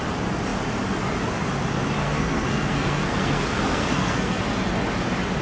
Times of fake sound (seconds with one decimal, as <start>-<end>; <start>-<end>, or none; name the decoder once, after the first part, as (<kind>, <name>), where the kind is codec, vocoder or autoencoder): 2.0-4.4 (codec, SNAC)